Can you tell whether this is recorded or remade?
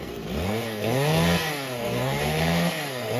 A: remade